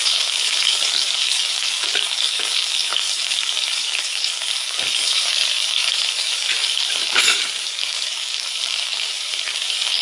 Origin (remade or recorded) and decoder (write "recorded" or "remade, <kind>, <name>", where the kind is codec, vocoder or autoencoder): remade, codec, DAC